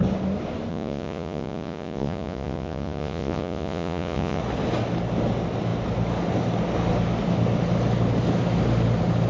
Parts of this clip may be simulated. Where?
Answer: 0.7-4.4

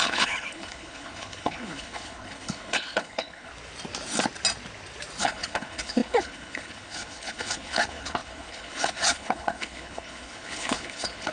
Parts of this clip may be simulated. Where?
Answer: 0.0-3.5; 5.2-11.3

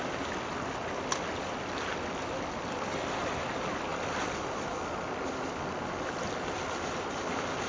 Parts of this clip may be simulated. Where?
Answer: none

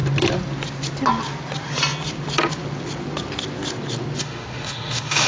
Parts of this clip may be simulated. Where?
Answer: 4.2-5.3